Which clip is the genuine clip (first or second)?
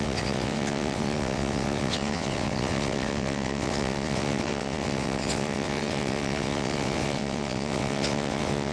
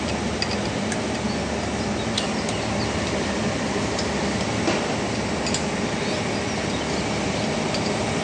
second